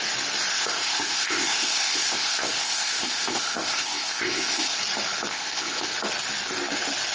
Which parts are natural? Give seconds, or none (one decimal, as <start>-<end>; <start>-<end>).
0.0-0.5; 4.8-5.3; 5.9-7.1

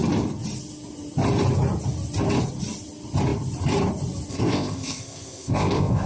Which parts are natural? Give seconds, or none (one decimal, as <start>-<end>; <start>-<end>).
0.0-4.3

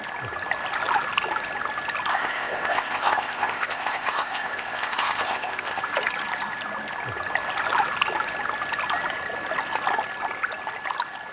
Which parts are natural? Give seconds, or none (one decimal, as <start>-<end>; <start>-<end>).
0.0-2.1; 5.8-11.3

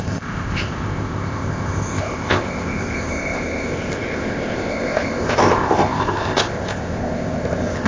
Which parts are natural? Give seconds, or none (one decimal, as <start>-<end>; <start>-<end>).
none